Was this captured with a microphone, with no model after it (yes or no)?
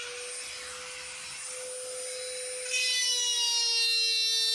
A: yes